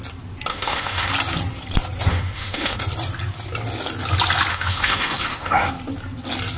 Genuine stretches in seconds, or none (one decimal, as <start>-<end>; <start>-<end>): 0.0-0.5; 1.1-2.1; 2.8-4.5; 5.7-6.6

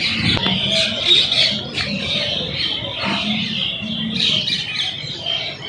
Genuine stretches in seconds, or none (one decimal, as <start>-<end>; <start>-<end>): 0.0-5.7

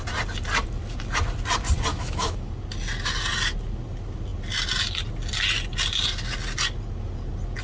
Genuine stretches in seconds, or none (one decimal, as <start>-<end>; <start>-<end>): 0.0-1.9; 2.5-7.6